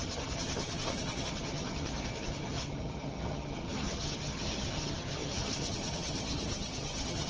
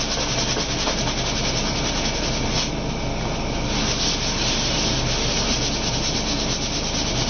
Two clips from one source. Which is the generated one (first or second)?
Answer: first